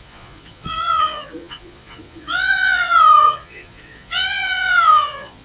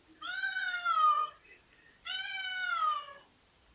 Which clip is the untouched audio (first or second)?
second